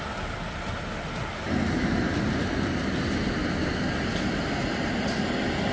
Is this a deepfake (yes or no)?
no